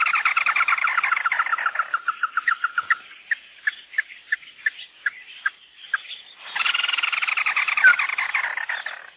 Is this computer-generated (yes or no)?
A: no